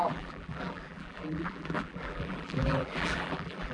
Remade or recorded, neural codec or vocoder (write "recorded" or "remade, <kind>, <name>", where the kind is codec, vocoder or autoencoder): remade, vocoder, BigVGAN v2